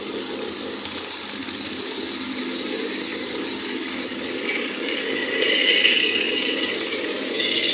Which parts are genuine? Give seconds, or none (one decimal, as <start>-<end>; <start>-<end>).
none